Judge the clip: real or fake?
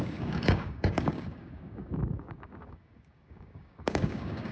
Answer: fake